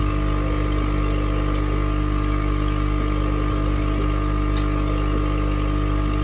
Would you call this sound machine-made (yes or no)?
no